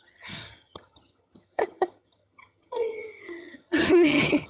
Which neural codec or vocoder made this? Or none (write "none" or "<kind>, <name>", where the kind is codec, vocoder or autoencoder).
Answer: vocoder, HiFi-GAN